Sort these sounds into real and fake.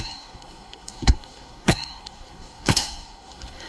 fake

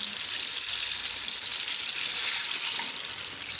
real